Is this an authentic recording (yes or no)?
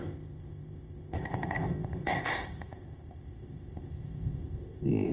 no